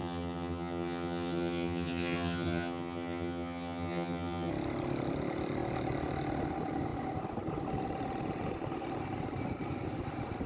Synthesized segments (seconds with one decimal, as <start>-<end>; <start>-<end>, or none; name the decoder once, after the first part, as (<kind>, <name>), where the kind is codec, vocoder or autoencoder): 0.0-4.5 (vocoder, HiFi-GAN)